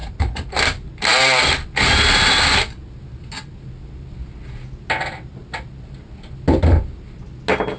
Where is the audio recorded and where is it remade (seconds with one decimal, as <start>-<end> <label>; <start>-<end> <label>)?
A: 0.0-0.5 remade; 0.5-7.8 recorded